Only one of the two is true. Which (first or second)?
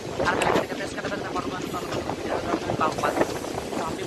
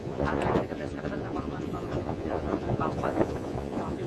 first